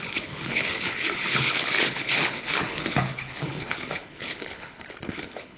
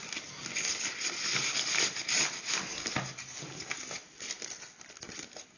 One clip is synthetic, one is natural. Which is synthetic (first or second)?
first